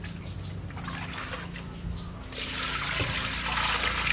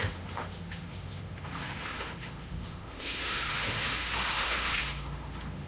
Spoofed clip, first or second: second